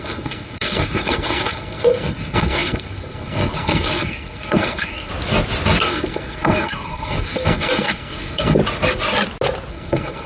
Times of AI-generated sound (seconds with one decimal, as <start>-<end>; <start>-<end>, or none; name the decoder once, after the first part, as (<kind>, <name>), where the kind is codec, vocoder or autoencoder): 0.0-5.1 (codec, SNAC); 5.8-8.6; 9.7-10.3